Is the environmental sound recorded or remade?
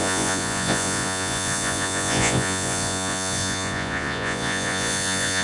remade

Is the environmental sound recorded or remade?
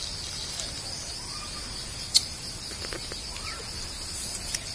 recorded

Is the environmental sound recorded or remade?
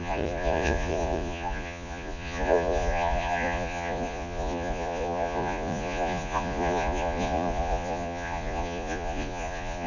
remade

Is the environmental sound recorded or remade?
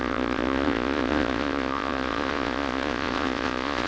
remade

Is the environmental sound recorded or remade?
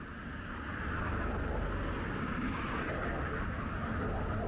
recorded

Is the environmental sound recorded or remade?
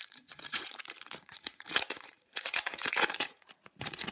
remade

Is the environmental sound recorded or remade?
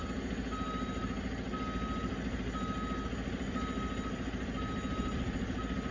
recorded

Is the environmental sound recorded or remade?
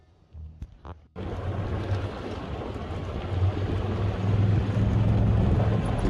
recorded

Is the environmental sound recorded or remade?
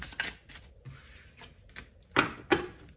recorded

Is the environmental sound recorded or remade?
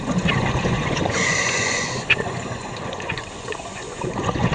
remade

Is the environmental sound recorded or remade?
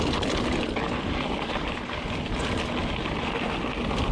recorded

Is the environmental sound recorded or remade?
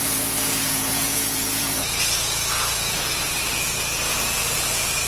remade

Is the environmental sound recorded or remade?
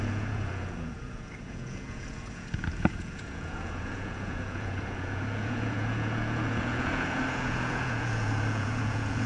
remade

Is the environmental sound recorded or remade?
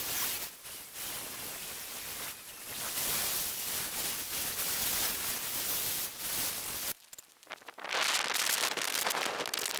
recorded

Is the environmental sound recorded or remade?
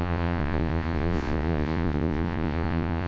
remade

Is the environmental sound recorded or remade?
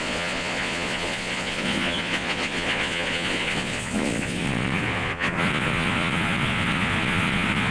remade